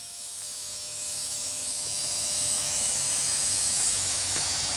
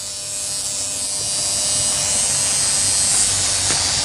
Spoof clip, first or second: first